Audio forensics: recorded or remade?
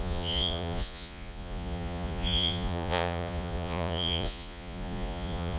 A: remade